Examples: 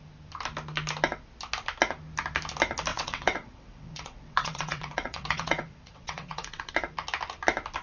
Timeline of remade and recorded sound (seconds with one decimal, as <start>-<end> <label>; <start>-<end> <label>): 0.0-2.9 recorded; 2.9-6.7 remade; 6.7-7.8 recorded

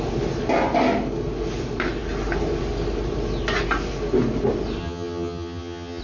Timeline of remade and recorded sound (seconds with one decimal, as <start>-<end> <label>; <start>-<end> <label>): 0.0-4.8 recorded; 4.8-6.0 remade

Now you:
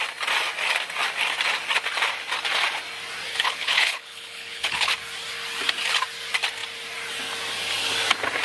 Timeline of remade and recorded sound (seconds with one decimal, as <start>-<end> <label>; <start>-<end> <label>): 0.0-3.3 recorded; 3.3-4.9 remade; 4.9-8.4 recorded

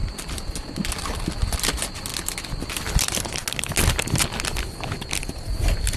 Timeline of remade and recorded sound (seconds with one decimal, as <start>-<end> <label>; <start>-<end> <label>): 0.0-6.0 recorded